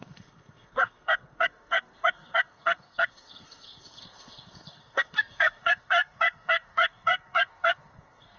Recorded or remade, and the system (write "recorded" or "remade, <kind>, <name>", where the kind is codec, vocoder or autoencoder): remade, codec, SNAC